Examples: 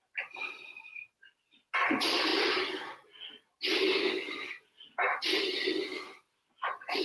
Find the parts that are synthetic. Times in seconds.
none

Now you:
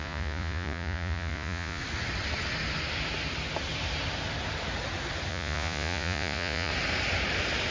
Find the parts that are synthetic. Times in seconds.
0.0-1.8; 5.3-6.7

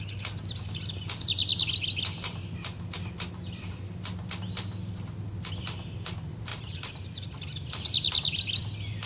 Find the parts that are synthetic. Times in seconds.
6.5-7.7

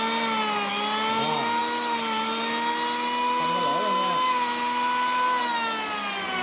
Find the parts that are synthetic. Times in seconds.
none